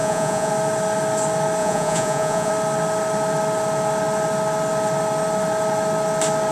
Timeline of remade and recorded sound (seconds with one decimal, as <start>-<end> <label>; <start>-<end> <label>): 0.0-0.5 remade; 0.5-1.6 recorded; 1.6-2.5 remade; 2.5-6.5 recorded